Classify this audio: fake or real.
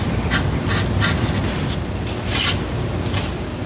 real